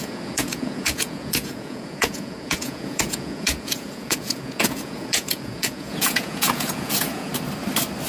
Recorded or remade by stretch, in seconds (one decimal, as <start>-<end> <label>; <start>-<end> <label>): 0.0-7.3 remade; 7.3-8.1 recorded